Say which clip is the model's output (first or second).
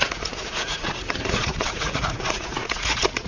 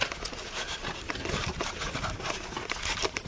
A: first